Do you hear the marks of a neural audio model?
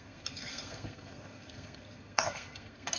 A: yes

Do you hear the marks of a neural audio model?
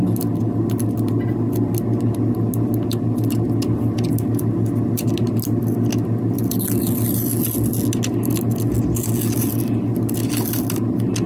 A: no